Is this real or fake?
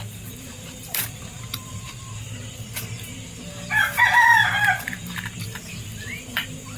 fake